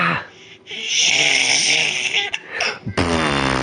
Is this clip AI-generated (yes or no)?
no